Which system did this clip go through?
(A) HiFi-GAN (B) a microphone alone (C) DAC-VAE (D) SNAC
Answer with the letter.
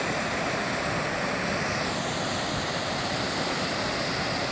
B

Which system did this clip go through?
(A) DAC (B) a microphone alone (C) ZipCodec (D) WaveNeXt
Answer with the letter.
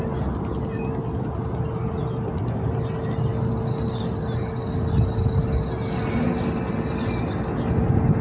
B